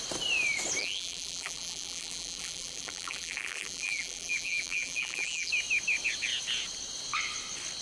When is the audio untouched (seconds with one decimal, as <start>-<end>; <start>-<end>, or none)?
0.0-0.8; 5.5-7.8